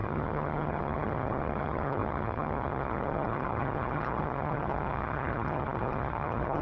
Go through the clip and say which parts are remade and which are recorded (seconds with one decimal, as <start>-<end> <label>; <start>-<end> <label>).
0.0-6.6 remade